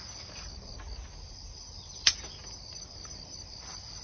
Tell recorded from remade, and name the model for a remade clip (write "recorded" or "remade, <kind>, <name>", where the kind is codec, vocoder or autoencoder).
recorded